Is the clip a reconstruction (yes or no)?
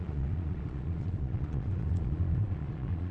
yes